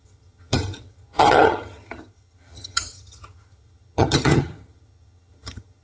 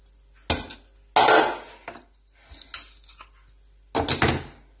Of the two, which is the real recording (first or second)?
second